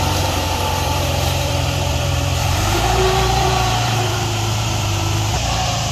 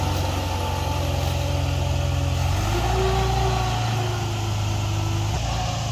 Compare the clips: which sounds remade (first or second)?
first